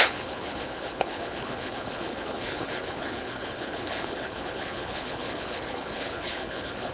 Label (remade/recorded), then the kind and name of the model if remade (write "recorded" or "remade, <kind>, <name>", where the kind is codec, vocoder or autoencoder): remade, codec, HILCodec